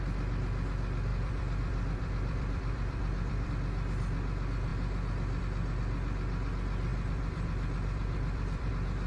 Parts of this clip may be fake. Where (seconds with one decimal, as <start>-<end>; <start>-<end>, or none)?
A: 1.1-3.5; 6.9-8.7

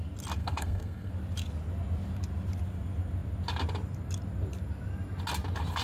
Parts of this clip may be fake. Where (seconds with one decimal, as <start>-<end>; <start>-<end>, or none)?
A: 0.4-1.1

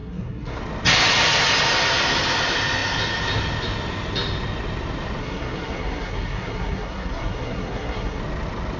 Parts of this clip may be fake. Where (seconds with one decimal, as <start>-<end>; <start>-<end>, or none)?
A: 0.0-0.6; 5.2-8.2

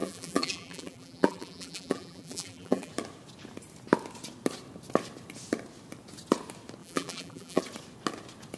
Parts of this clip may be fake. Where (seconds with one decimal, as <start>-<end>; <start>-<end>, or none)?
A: 0.0-2.9; 6.8-7.6

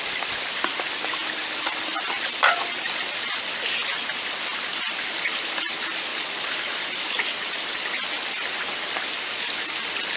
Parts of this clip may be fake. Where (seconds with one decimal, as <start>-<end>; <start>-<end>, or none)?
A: none

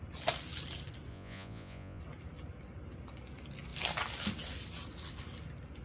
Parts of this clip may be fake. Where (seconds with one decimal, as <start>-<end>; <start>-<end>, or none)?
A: 1.1-2.0